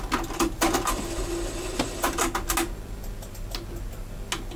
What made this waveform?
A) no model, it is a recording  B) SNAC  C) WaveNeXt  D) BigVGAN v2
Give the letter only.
A